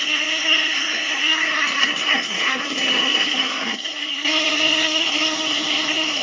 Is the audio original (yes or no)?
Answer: no